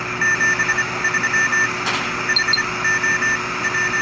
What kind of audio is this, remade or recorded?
recorded